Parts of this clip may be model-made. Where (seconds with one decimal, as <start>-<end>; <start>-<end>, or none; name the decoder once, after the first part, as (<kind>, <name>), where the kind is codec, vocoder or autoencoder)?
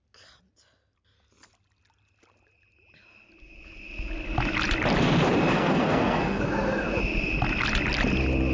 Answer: 5.5-6.4 (codec, SNAC)